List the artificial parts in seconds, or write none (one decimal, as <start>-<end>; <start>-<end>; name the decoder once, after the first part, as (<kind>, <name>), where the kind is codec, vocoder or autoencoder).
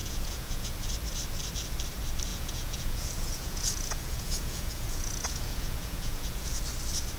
0.0-0.9 (vocoder, Vocos); 2.3-6.6